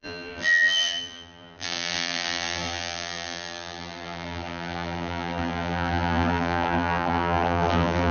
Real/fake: fake